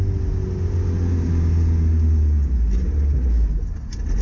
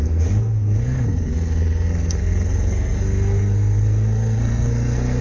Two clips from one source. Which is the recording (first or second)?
first